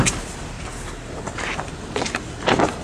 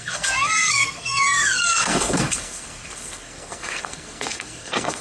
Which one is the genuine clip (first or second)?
first